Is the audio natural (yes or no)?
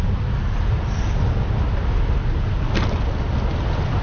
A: yes